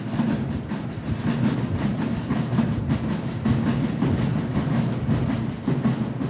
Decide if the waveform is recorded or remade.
recorded